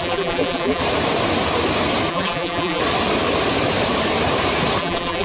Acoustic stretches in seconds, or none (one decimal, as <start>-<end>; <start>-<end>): 0.8-2.1; 2.8-4.8